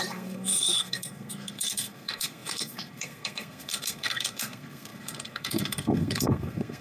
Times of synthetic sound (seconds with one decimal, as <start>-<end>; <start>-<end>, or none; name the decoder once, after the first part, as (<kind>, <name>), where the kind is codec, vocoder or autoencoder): 0.0-6.8 (codec, SNAC)